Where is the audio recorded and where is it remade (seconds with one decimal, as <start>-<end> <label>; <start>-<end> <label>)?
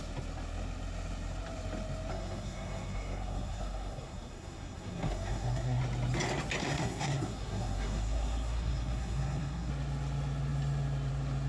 0.0-2.1 recorded; 2.1-5.8 remade; 5.8-6.6 recorded; 6.6-9.7 remade; 9.7-11.5 recorded